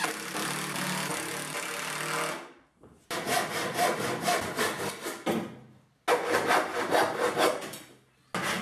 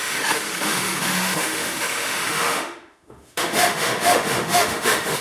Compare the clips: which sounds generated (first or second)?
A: second